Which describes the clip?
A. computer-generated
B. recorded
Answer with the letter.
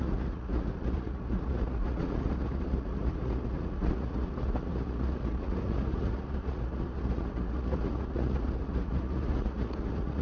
A